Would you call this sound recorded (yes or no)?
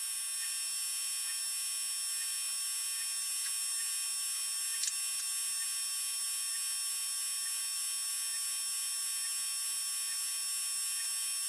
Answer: yes